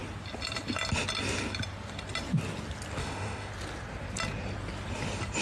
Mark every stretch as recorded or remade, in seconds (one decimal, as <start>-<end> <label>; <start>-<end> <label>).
0.0-3.0 recorded; 3.0-3.5 remade; 3.5-5.4 recorded